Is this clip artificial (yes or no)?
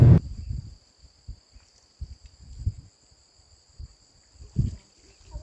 no